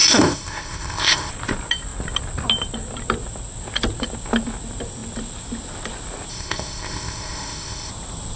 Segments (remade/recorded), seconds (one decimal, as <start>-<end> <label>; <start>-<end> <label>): 0.0-1.3 remade; 1.3-6.3 recorded; 6.3-7.9 remade; 7.9-8.4 recorded